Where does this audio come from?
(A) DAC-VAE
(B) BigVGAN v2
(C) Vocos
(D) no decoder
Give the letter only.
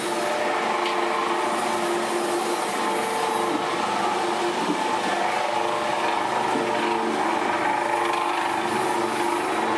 D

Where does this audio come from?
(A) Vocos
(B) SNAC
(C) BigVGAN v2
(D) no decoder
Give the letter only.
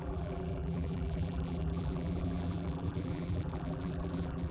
C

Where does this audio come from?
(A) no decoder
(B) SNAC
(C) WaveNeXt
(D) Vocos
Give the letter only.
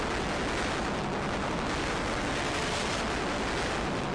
A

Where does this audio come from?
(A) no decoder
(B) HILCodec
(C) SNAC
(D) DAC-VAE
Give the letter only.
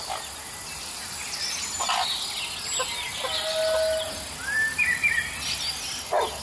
A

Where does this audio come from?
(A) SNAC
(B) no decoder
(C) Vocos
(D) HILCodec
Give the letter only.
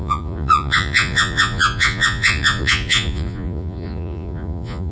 C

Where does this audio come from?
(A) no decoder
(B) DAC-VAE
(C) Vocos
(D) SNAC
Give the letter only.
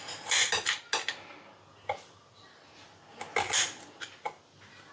A